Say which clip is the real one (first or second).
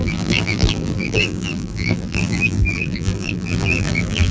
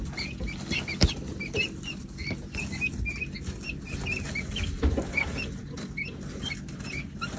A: second